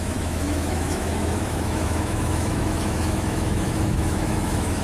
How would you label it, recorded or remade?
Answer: remade